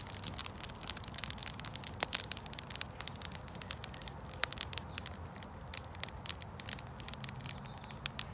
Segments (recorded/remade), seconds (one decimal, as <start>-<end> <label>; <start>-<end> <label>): 0.0-8.3 recorded

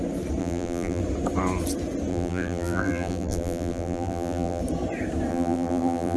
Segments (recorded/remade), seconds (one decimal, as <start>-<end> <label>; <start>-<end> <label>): 0.0-0.4 recorded; 0.4-1.0 remade; 1.0-2.1 recorded; 2.1-4.6 remade; 4.6-5.3 recorded; 5.3-6.2 remade

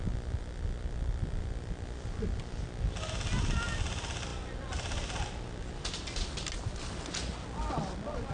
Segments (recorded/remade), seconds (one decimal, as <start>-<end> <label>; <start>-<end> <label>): 0.0-0.4 recorded; 0.4-1.2 remade; 1.2-8.3 recorded

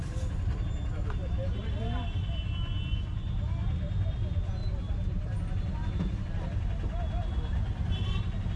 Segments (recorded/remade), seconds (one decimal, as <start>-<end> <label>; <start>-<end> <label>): 0.0-1.2 recorded; 1.2-1.7 remade; 1.7-4.6 recorded; 4.6-5.4 remade; 5.4-8.6 recorded

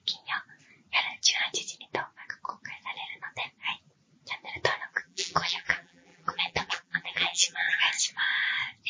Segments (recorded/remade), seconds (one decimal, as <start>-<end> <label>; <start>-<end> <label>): 0.0-4.9 recorded; 4.9-7.8 remade; 7.8-8.9 recorded

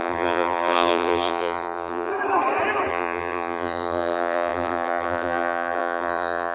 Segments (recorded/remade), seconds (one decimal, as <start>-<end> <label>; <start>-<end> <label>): 0.0-2.1 remade; 2.1-2.9 recorded; 2.9-6.5 remade

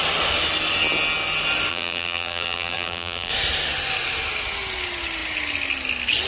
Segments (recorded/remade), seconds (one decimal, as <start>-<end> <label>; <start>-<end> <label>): 0.0-1.7 recorded; 1.7-3.3 remade; 3.3-6.3 recorded